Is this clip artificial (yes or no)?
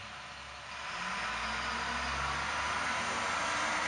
no